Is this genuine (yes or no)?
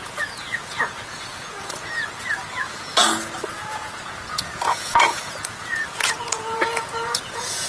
no